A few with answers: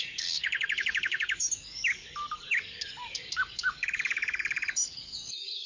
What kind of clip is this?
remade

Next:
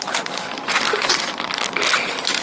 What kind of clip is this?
recorded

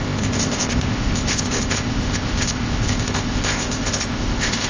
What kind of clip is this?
remade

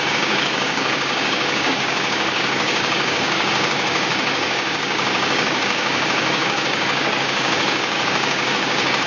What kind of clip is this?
remade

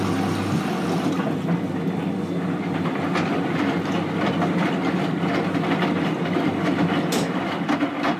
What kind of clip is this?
recorded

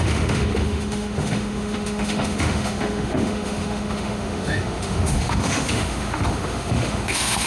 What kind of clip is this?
remade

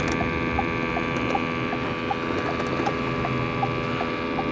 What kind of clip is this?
recorded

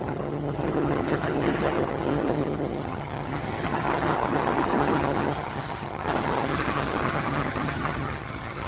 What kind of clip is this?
remade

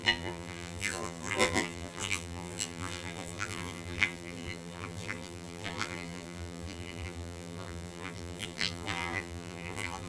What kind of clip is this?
remade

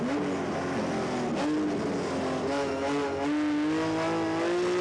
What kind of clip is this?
recorded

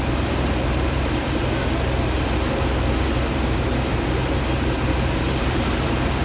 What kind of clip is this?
remade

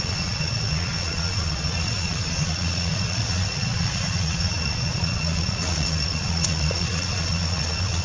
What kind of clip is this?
remade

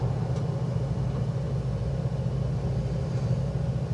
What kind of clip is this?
recorded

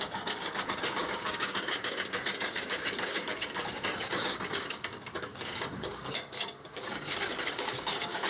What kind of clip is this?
remade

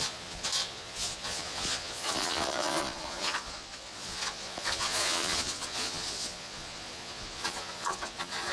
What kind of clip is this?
remade